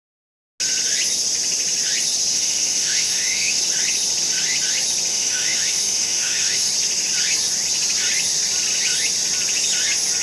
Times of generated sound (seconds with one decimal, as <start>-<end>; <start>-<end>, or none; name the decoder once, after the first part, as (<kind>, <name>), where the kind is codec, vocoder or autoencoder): 2.3-3.6 (autoencoder, DAC-VAE); 5.1-6.7